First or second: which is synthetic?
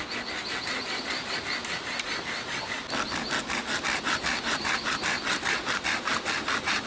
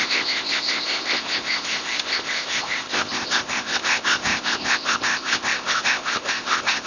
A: second